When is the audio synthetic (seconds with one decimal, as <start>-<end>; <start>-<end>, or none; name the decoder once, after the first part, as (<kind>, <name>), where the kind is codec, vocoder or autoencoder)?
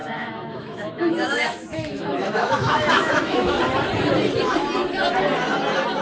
0.0-3.6 (autoencoder, DAC-VAE)